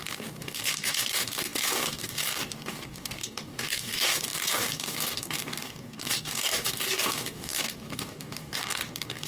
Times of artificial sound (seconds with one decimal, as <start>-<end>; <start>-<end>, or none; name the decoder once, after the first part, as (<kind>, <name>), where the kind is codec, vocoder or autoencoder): 0.0-9.3 (codec, DAC)